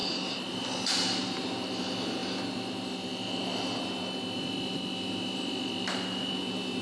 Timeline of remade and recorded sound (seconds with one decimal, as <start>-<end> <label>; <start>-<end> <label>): 0.0-6.8 remade